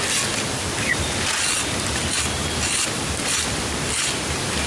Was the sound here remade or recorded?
recorded